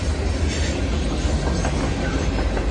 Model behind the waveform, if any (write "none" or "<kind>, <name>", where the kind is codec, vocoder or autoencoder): none